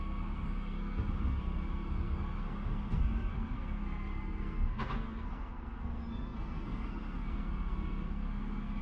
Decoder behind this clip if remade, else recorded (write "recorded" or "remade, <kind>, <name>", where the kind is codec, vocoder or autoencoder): remade, codec, SNAC